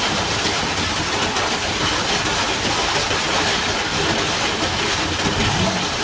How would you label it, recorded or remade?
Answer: recorded